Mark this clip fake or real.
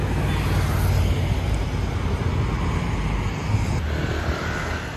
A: real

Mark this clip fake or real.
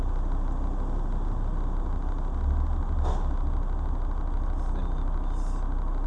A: real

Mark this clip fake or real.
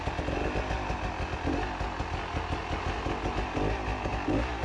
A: real